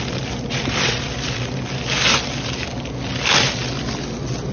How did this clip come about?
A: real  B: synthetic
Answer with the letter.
A